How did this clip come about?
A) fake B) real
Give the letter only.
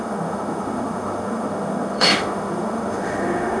A